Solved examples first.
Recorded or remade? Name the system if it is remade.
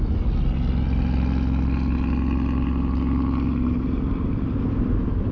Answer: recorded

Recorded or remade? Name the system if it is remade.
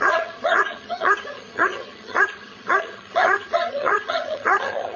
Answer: remade, vocoder, HiFi-GAN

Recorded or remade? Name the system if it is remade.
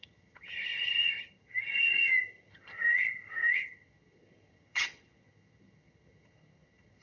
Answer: remade, vocoder, HiFi-GAN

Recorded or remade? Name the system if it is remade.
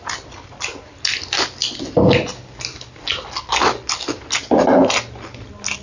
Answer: recorded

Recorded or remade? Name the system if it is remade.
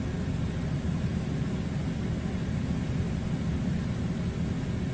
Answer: recorded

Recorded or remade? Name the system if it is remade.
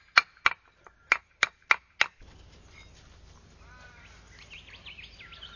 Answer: recorded